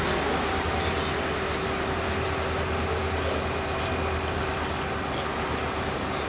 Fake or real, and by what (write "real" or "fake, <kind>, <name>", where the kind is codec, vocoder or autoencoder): real